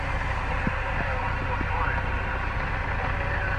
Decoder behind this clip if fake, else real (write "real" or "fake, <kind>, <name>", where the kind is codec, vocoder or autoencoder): real